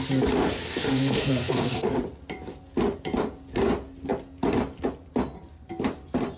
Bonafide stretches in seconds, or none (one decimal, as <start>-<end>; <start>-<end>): 0.0-0.8; 2.0-6.4